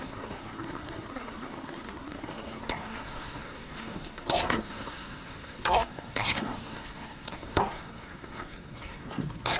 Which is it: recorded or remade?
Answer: remade